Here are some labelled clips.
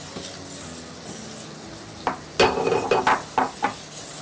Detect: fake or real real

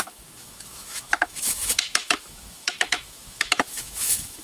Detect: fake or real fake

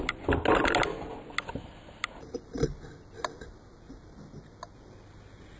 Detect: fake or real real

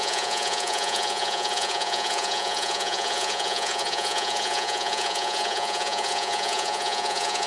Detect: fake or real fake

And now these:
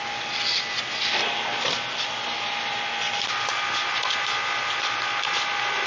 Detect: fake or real real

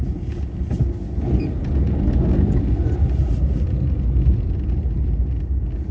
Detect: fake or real real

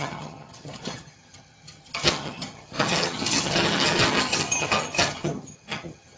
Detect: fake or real fake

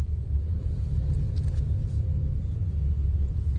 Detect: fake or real fake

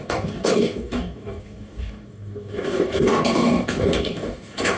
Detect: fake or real fake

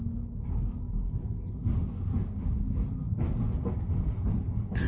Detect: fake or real real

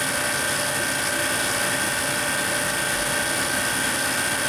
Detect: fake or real real